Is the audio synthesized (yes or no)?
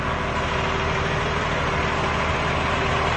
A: no